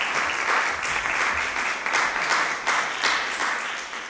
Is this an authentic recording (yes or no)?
yes